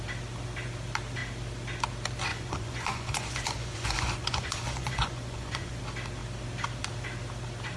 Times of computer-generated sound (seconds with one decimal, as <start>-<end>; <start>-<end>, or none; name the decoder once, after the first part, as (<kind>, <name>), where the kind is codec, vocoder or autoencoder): 2.3-5.8 (vocoder, Vocos)